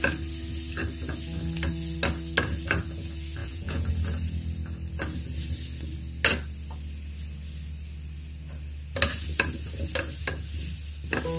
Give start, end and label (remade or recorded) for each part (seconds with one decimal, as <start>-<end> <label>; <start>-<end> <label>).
0.0-3.4 recorded; 3.4-3.9 remade; 3.9-11.4 recorded

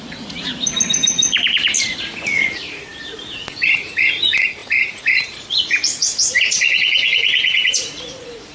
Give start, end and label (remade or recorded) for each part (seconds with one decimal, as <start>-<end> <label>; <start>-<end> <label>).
0.0-0.5 remade; 0.5-1.8 recorded; 1.8-8.5 remade

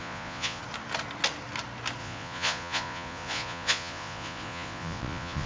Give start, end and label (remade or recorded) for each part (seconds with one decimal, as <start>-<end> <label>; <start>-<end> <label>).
0.0-0.6 remade; 0.6-2.0 recorded; 2.0-5.5 remade

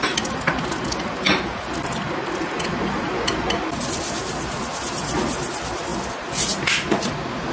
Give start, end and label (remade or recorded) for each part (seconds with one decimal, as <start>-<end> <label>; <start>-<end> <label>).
0.0-7.5 recorded

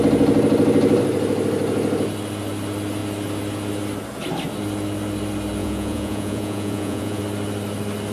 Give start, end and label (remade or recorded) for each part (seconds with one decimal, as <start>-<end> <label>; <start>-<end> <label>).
0.0-5.6 recorded; 5.6-7.2 remade; 7.2-8.1 recorded

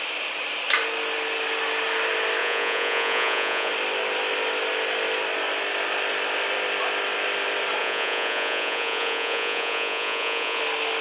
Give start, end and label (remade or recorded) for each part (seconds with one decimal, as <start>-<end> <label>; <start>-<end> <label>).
0.0-2.4 recorded; 2.4-3.7 remade; 3.7-7.8 recorded; 7.8-10.6 remade; 10.6-11.0 recorded